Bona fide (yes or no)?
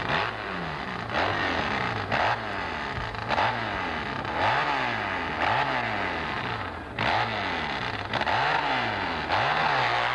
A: yes